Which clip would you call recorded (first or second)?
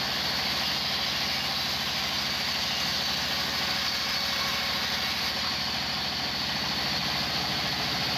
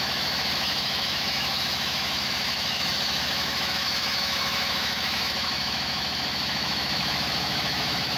first